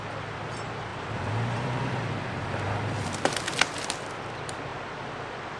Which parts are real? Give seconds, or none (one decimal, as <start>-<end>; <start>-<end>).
none